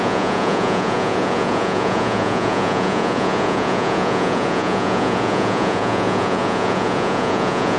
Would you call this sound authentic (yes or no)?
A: no